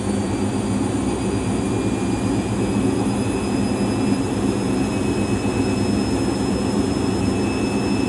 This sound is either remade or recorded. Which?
recorded